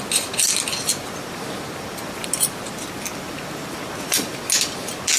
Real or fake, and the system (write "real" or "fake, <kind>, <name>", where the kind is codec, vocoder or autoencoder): real